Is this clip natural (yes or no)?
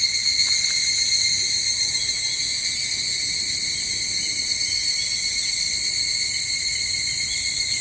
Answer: yes